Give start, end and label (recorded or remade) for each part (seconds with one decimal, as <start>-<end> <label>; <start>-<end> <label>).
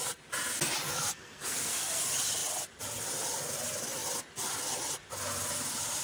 0.0-0.9 recorded; 0.9-2.0 remade; 2.0-6.0 recorded